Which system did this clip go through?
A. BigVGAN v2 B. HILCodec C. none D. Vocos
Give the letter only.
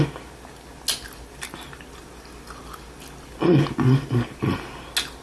C